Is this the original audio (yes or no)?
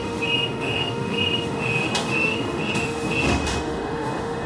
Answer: no